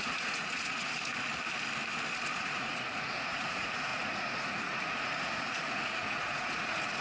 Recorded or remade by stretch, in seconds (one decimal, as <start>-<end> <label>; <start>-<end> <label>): 0.0-1.1 remade; 1.1-2.4 recorded; 2.4-7.0 remade